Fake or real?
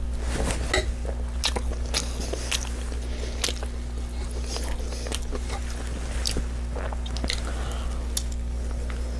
real